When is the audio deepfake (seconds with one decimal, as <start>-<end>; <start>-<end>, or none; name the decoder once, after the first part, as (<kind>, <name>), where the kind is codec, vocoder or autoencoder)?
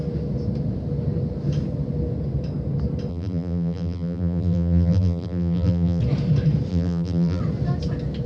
3.1-6.0 (vocoder, BigVGAN v2); 6.7-7.4